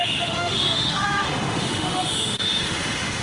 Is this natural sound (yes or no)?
no